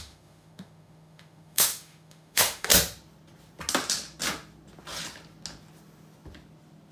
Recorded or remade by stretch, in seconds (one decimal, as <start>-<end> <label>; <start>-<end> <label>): 0.0-2.7 remade; 2.7-6.9 recorded

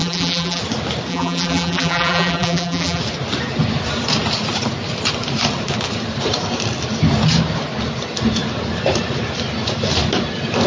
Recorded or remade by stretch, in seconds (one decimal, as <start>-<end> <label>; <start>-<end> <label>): 0.0-0.6 remade; 0.6-1.1 recorded; 1.1-3.0 remade; 3.0-10.7 recorded

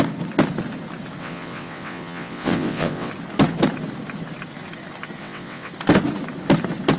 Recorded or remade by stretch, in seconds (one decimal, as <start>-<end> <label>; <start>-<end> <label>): 0.0-1.2 recorded; 1.2-3.1 remade; 3.1-5.2 recorded; 5.2-5.7 remade; 5.7-7.0 recorded